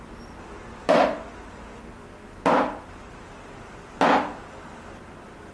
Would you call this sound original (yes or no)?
yes